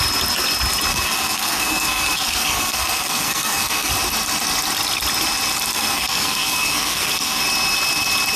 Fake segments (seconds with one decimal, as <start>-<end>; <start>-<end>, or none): 0.9-3.9; 5.7-7.4